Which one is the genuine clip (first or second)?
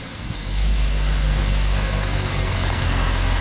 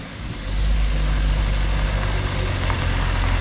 second